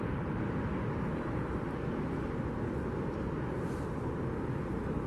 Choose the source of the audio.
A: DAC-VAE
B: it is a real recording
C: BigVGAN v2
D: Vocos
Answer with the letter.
B